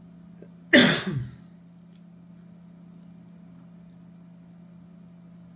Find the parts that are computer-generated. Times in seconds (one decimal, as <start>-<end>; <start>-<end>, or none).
none